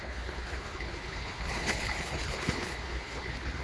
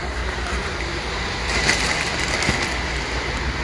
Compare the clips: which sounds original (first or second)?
second